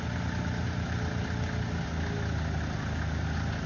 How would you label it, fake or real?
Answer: real